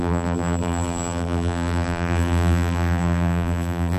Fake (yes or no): yes